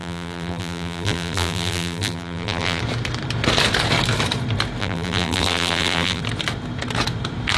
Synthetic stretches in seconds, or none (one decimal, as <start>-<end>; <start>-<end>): 0.0-2.8; 4.8-6.2